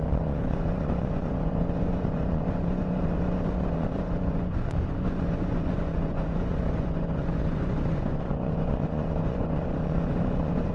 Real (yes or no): no